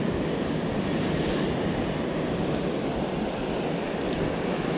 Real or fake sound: real